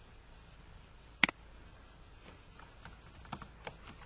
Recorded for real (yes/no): yes